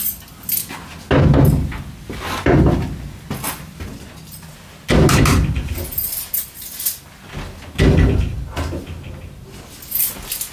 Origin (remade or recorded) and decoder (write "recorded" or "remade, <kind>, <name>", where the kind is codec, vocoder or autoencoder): recorded